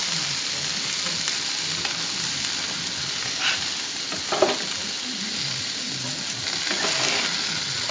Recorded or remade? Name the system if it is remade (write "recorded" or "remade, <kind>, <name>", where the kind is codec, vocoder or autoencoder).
recorded